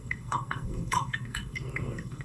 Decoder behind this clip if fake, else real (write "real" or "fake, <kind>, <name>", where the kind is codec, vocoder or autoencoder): fake, codec, SNAC